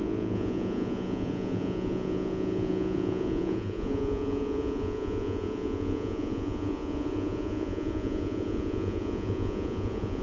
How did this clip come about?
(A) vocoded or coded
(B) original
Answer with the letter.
A